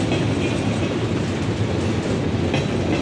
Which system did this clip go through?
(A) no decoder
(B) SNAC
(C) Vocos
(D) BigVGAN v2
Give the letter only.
A